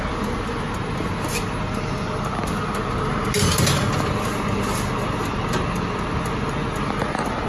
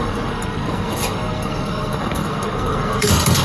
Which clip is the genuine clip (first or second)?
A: first